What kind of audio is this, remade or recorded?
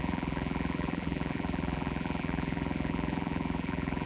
remade